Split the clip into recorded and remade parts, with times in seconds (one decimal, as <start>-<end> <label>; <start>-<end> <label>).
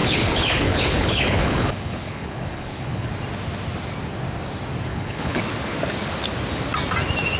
0.0-3.1 remade; 3.1-4.9 recorded; 4.9-5.4 remade; 5.4-7.4 recorded